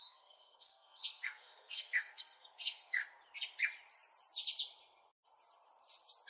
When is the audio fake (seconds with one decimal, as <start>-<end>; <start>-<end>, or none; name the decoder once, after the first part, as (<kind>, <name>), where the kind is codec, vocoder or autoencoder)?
0.0-3.0 (codec, SNAC)